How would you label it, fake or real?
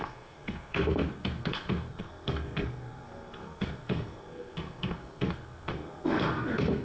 fake